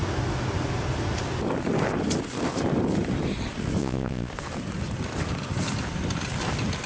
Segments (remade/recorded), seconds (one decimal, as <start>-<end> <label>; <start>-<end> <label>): 0.0-3.8 recorded; 3.8-4.3 remade; 4.3-6.9 recorded